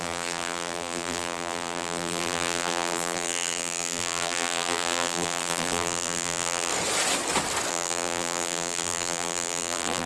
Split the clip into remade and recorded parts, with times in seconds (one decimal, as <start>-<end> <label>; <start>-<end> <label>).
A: 0.0-6.7 remade; 6.7-7.7 recorded; 7.7-10.1 remade